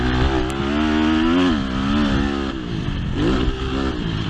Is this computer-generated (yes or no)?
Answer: no